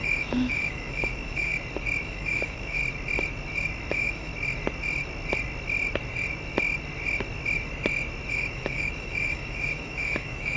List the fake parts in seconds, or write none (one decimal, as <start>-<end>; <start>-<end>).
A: 0.0-1.5; 2.0-2.8; 3.9-4.3; 8.3-10.6